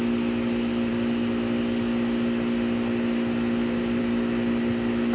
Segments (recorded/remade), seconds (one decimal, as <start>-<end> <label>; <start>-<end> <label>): 0.0-5.1 recorded